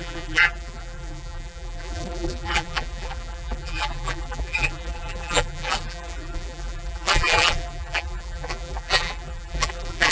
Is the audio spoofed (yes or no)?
yes